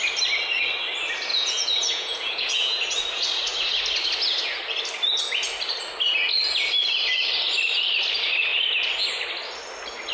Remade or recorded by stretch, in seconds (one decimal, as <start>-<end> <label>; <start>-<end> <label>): 0.0-1.3 recorded; 1.3-2.8 remade; 2.8-10.1 recorded